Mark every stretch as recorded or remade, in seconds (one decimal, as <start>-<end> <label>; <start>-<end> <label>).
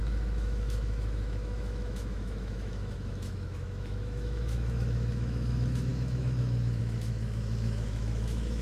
0.0-8.6 remade